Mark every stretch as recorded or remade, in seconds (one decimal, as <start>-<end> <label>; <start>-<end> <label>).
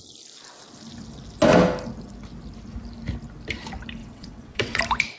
0.0-4.0 recorded; 4.0-4.8 remade; 4.8-5.2 recorded